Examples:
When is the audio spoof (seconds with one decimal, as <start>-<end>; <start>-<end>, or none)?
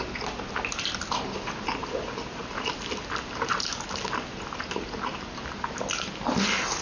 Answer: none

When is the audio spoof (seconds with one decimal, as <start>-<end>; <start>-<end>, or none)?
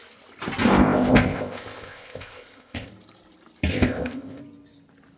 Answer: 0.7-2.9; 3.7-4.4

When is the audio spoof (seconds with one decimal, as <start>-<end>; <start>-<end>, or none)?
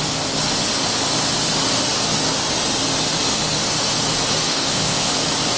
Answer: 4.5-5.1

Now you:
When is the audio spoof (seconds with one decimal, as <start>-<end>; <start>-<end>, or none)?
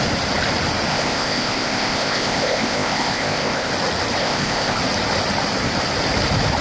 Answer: 0.9-3.7; 4.2-4.8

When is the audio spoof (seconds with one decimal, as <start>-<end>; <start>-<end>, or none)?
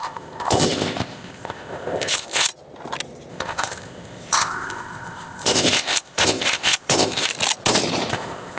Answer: 0.0-2.5; 3.3-7.3; 8.1-8.6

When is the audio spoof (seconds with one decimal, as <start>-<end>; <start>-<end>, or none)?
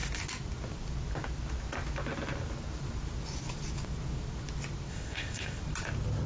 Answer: 4.9-5.6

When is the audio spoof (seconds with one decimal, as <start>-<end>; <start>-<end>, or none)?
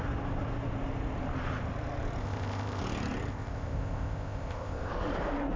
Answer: 2.2-2.8; 3.3-4.9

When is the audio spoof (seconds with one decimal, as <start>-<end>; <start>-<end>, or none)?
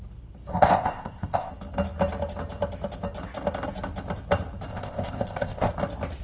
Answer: 0.5-1.5; 4.7-5.7